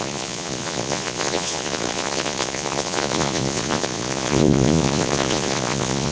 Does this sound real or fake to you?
fake